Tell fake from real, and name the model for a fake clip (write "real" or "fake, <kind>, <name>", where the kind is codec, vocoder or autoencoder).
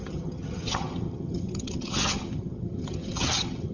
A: fake, vocoder, HiFi-GAN